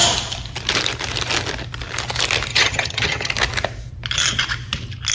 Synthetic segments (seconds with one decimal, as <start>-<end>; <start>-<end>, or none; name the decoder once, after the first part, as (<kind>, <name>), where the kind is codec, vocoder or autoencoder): 2.5-3.3 (vocoder, HiFi-GAN)